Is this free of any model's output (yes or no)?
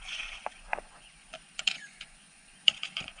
no